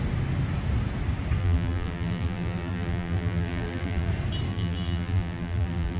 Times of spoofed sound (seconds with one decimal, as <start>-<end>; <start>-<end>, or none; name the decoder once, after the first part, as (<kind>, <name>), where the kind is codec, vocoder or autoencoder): 1.4-4.1 (vocoder, BigVGAN v2); 4.5-6.0